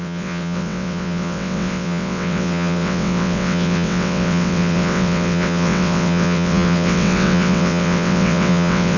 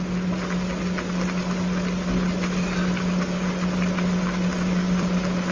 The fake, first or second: first